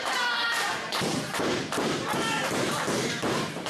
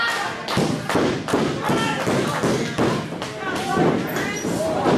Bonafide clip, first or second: second